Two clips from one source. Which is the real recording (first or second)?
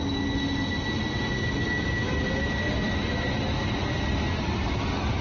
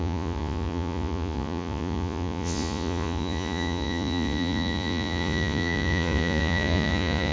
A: first